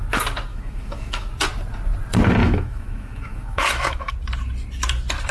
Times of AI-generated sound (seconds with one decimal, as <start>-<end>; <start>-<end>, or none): 0.5-1.3; 2.4-4.1